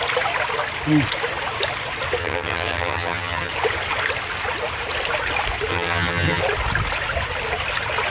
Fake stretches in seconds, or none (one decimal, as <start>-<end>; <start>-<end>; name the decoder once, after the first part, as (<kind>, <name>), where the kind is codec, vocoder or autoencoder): 2.2-3.5 (vocoder, HiFi-GAN); 5.7-6.4